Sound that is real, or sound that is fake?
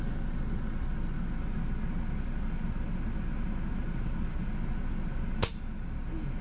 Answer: real